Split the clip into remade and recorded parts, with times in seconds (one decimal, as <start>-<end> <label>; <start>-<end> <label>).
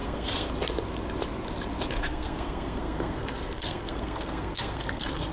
0.0-0.5 remade; 0.5-2.0 recorded; 2.0-5.3 remade